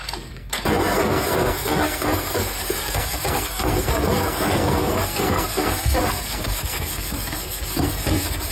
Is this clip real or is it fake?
fake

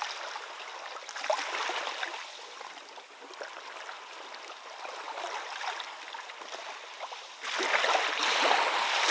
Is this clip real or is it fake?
real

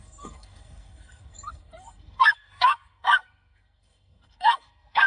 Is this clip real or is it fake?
fake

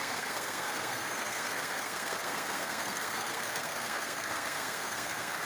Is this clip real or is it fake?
fake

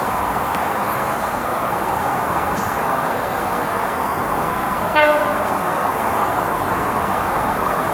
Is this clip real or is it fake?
fake